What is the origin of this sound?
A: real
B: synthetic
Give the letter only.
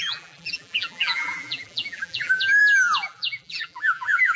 B